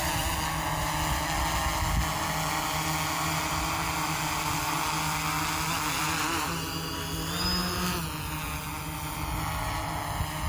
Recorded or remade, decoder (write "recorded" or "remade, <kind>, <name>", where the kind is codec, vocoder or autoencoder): recorded